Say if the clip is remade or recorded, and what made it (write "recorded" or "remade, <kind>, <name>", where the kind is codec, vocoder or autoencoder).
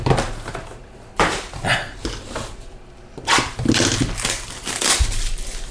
recorded